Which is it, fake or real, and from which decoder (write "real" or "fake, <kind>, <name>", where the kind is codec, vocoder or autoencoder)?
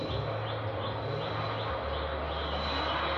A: real